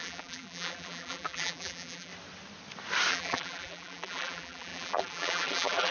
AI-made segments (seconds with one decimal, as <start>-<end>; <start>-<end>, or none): 0.0-2.1; 3.1-5.9